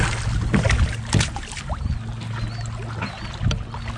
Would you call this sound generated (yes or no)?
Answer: no